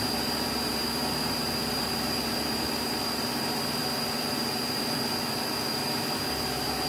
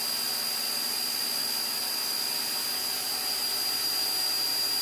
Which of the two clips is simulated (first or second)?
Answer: first